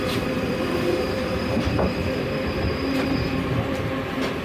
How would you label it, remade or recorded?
remade